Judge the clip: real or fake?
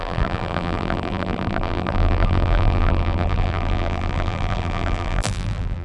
fake